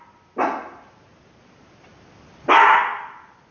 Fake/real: real